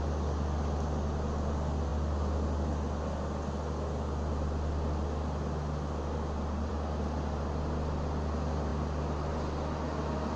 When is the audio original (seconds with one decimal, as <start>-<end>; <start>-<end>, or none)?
0.0-10.4